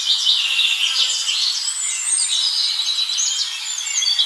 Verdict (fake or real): real